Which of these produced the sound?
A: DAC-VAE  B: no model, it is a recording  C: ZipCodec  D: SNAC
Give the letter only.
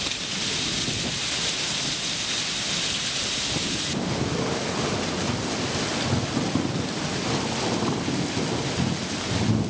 B